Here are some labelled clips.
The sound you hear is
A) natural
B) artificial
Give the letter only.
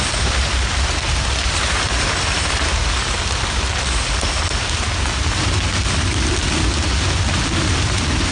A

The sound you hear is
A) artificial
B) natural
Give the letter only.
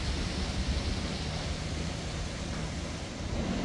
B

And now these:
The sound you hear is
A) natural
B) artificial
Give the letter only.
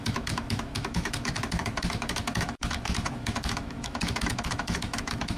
B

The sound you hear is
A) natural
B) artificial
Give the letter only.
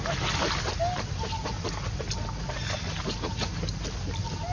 A